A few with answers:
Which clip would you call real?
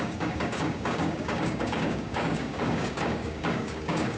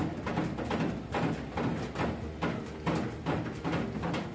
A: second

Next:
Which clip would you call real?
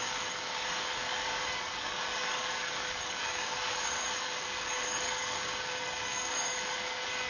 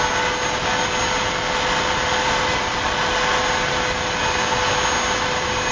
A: second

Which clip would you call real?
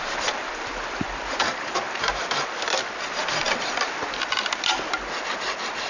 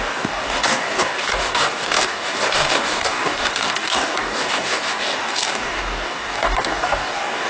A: first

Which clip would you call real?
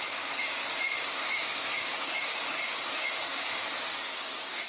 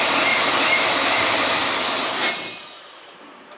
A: second